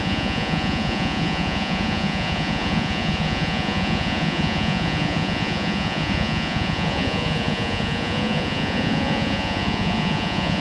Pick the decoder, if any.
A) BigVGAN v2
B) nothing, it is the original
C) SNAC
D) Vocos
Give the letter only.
D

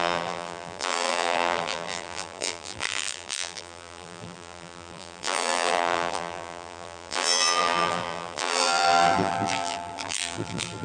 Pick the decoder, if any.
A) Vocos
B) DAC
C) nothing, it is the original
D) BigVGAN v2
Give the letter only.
D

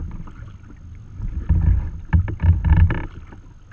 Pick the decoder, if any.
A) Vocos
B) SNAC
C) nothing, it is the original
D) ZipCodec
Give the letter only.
C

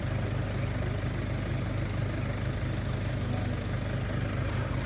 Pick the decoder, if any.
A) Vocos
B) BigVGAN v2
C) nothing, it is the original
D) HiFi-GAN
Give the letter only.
C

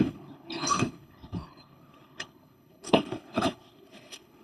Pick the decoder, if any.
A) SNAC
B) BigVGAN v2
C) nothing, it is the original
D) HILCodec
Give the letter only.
D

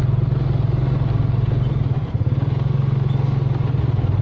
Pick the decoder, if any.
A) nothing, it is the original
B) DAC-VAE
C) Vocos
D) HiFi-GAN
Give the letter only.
A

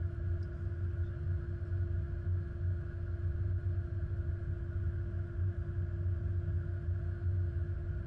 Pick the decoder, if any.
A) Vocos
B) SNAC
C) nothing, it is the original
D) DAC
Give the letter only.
C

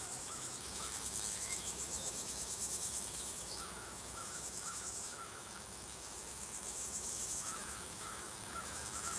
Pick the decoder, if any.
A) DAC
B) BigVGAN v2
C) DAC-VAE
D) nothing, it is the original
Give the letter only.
C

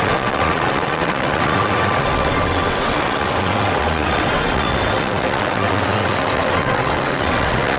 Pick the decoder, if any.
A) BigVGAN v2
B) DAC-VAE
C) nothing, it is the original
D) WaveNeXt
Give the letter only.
D